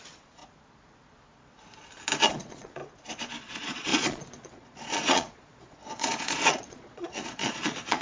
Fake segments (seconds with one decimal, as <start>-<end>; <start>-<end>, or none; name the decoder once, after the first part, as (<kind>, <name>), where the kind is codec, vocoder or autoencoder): 0.0-0.4 (vocoder, Vocos); 2.2-2.8; 3.4-8.0